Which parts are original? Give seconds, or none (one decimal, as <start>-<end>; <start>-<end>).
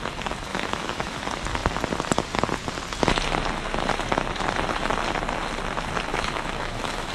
0.0-0.5; 1.2-6.1